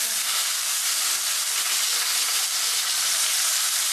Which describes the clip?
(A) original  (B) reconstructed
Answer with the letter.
A